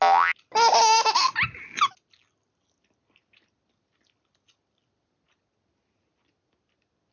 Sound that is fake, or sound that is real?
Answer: real